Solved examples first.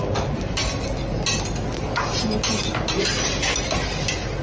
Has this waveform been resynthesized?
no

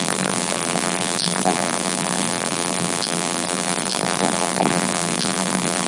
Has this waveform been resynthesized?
yes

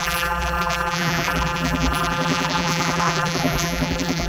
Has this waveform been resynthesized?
yes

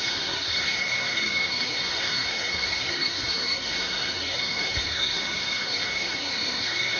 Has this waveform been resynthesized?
yes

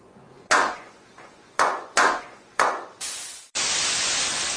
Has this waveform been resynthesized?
yes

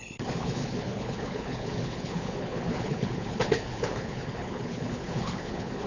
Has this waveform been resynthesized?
yes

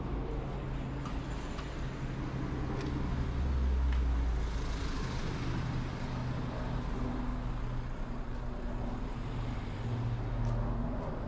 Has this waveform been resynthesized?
no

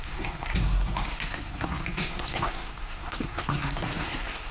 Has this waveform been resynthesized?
yes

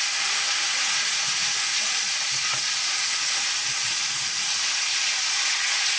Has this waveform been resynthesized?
yes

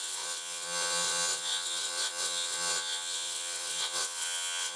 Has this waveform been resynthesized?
yes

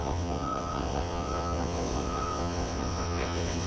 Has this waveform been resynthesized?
yes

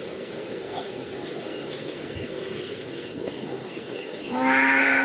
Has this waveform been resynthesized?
yes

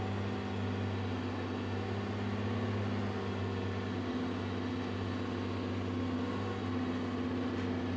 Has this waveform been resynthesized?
no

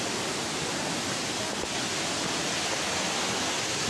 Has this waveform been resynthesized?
no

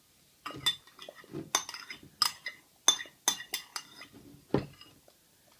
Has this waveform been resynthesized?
no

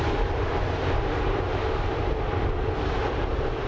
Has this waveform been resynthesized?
no